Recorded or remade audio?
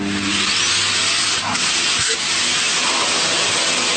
recorded